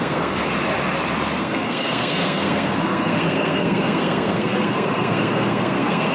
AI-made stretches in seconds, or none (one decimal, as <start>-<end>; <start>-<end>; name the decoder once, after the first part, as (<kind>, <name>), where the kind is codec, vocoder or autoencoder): 0.0-0.4 (codec, SNAC); 1.4-6.1